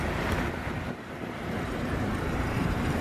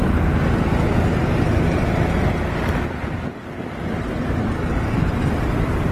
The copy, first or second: first